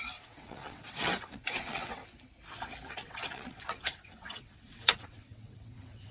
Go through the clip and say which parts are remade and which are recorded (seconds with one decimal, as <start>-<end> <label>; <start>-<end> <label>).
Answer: 0.0-2.0 remade; 2.0-2.9 recorded; 2.9-6.1 remade